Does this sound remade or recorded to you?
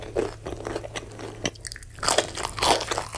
recorded